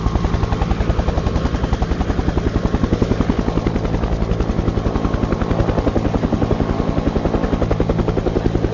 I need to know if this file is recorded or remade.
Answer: recorded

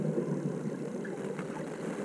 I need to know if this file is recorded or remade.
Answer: recorded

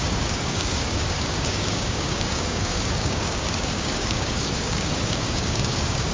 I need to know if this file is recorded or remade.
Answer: remade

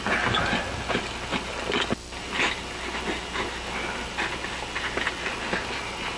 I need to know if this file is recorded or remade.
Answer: recorded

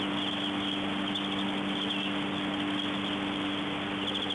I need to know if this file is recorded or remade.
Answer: recorded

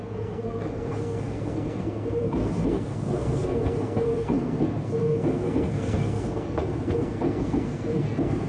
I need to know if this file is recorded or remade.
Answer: remade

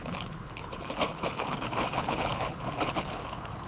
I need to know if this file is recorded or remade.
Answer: remade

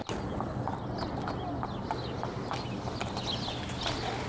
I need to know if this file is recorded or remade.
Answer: recorded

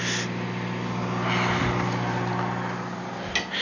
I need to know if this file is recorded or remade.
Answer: recorded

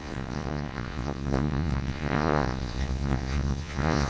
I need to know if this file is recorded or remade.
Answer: remade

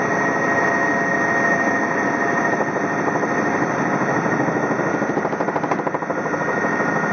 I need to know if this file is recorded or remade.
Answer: recorded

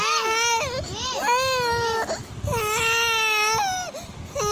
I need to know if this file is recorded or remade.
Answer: recorded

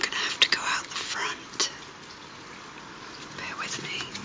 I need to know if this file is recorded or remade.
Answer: recorded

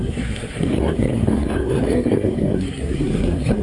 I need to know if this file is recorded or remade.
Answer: remade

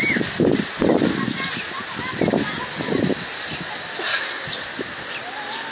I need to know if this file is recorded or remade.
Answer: recorded